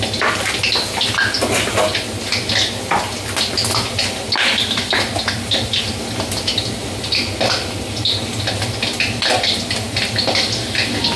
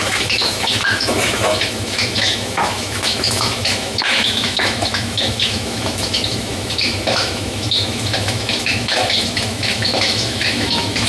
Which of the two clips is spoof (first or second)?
second